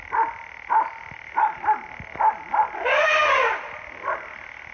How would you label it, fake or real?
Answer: real